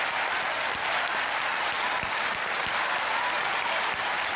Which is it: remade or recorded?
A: recorded